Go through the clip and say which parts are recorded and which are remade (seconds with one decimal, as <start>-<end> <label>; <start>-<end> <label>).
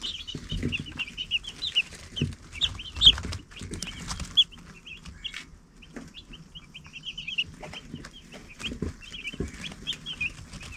0.0-10.8 recorded